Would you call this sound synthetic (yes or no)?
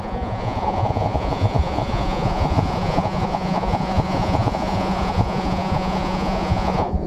yes